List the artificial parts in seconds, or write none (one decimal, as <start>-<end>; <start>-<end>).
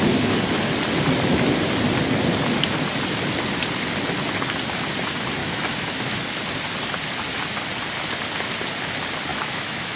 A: 5.4-6.2; 9.3-10.0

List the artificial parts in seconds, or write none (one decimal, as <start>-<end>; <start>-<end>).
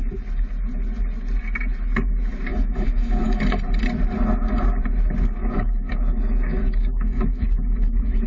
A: 2.5-3.4; 5.4-8.3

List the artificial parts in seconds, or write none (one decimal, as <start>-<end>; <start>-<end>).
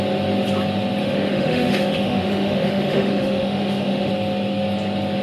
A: 1.0-4.1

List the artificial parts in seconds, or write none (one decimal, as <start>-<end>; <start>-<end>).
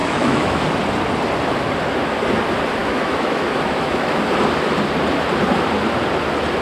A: 0.0-0.6; 2.8-4.2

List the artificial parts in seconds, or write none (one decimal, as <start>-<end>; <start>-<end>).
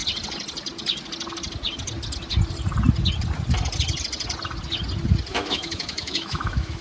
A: 5.3-6.8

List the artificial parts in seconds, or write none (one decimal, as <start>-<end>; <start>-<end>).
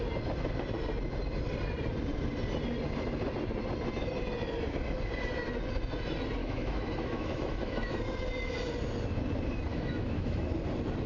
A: 6.4-8.0; 9.7-10.5